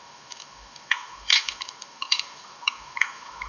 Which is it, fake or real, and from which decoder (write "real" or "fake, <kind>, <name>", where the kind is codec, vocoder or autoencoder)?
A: fake, autoencoder, DAC-VAE